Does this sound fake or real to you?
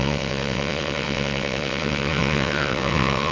fake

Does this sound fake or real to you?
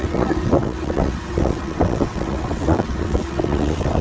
fake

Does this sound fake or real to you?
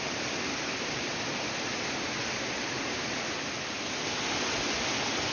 real